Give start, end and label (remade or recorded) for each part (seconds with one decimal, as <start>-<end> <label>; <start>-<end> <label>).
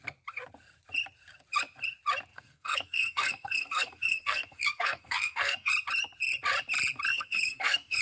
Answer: 0.0-2.3 recorded; 2.3-5.7 remade; 5.7-7.1 recorded; 7.1-8.0 remade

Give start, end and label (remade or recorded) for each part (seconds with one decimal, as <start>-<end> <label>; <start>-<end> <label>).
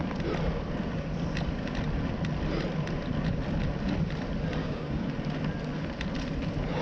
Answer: 0.0-4.6 recorded; 4.6-5.1 remade; 5.1-6.8 recorded